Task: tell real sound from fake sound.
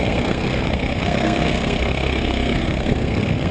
fake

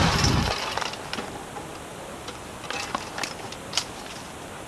real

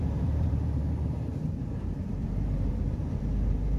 fake